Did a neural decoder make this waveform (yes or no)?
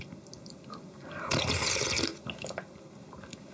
no